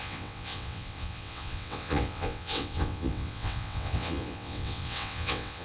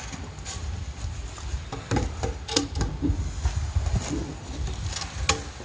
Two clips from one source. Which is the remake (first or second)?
first